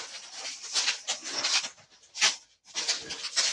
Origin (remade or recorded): remade